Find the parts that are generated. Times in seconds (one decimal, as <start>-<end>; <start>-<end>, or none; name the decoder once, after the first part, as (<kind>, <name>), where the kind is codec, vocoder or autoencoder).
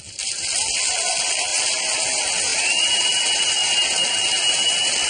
none